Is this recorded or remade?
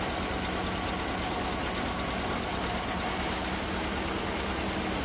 recorded